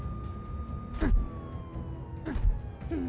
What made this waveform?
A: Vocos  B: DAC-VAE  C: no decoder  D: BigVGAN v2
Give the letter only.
C